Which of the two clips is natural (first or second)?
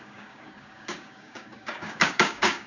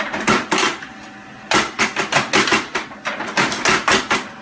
second